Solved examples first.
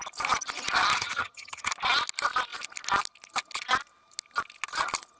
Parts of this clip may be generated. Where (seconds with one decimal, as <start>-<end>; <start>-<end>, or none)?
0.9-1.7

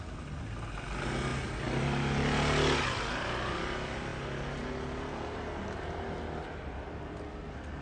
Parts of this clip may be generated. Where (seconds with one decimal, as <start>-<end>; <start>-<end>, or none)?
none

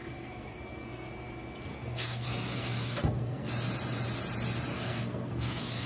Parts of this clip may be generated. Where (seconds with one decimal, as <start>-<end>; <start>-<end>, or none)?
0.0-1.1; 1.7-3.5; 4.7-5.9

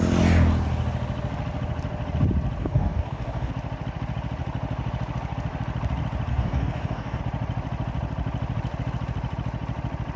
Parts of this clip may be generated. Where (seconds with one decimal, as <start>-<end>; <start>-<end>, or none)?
2.6-3.5; 6.3-7.2